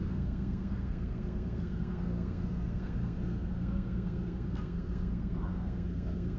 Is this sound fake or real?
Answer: fake